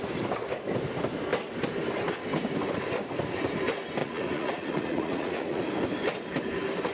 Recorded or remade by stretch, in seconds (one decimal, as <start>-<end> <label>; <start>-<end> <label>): 0.0-4.0 recorded; 4.0-5.6 remade; 5.6-6.9 recorded